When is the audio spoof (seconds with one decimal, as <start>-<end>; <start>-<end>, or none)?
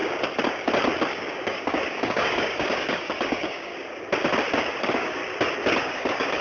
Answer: 1.1-3.7; 4.8-5.2; 5.8-6.4